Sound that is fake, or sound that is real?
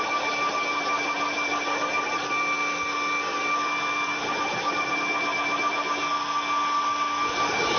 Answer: real